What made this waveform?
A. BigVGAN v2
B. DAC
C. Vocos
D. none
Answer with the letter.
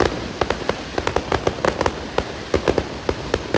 A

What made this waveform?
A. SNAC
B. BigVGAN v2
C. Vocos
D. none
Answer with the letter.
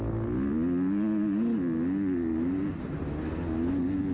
D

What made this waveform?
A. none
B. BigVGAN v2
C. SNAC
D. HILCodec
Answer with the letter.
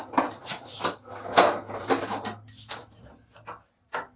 A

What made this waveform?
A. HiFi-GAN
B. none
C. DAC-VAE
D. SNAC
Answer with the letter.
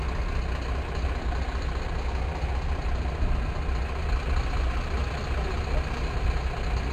B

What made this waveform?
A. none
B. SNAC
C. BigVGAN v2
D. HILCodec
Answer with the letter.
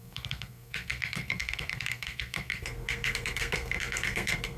B